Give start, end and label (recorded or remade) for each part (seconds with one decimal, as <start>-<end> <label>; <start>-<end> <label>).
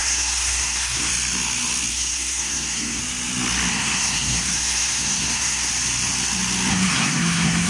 0.0-1.1 remade; 1.1-1.9 recorded; 1.9-3.0 remade; 3.0-3.7 recorded; 3.7-5.7 remade; 5.7-6.7 recorded; 6.7-7.7 remade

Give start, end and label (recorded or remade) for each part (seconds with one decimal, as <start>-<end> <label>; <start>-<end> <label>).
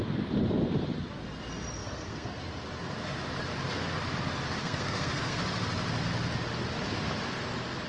0.0-1.8 recorded; 1.8-2.3 remade; 2.3-4.6 recorded; 4.6-5.4 remade; 5.4-7.9 recorded